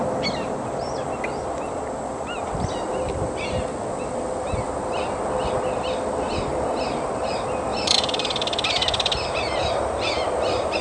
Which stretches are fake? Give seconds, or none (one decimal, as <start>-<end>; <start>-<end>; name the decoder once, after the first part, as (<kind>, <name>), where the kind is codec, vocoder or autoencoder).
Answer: 7.7-10.1 (vocoder, BigVGAN v2)